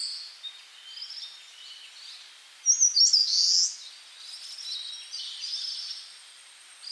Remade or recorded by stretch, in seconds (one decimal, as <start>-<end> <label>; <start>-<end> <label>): 0.0-6.9 recorded